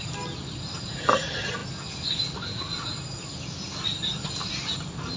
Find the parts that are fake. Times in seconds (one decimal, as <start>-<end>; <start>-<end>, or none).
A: none